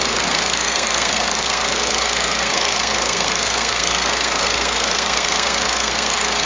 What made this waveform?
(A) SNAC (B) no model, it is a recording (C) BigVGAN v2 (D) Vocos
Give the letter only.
A